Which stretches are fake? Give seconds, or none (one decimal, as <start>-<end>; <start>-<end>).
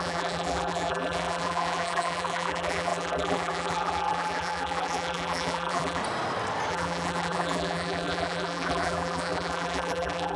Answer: 0.0-6.0; 6.7-10.4